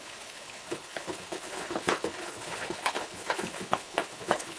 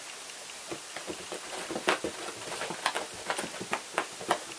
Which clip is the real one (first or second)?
second